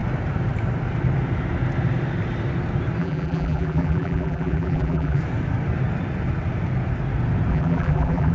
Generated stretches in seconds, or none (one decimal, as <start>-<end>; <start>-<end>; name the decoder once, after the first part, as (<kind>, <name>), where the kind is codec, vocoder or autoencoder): 3.0-5.2 (vocoder, BigVGAN v2); 7.5-8.3